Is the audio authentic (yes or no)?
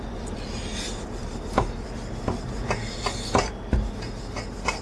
yes